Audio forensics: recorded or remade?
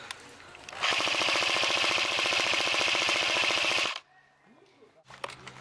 recorded